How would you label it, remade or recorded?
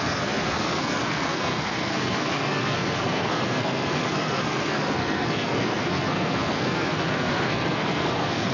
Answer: remade